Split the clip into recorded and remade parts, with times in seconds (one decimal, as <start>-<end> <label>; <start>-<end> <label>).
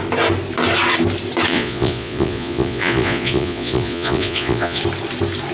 0.0-1.5 recorded; 1.5-4.8 remade; 4.8-5.5 recorded